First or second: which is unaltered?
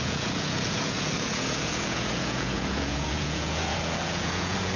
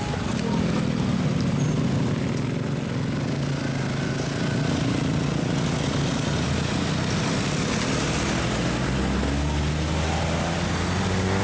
second